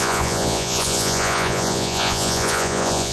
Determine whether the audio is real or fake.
fake